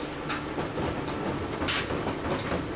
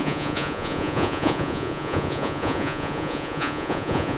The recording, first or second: first